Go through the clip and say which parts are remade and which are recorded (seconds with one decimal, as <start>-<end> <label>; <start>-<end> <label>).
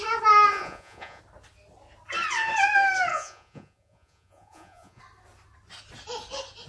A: 0.0-0.5 recorded; 0.5-1.2 remade; 1.2-3.1 recorded; 3.1-5.0 remade; 5.0-6.7 recorded